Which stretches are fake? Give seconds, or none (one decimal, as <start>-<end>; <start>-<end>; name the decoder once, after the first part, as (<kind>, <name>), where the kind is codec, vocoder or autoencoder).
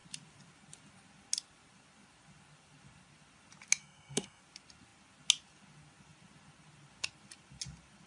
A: 3.8-4.4 (codec, SNAC)